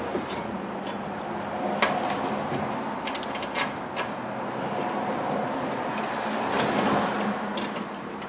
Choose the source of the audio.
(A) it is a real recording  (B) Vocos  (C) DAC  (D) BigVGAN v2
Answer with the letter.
A